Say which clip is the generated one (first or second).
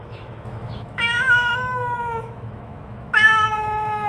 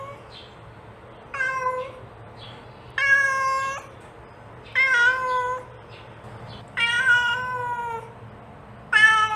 first